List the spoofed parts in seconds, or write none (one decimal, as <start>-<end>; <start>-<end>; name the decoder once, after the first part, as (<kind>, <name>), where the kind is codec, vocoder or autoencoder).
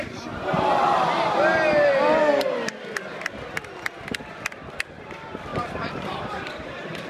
5.5-7.1 (vocoder, BigVGAN v2)